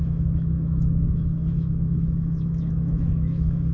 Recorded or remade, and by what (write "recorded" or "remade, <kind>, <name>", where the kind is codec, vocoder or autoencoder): remade, autoencoder, DAC-VAE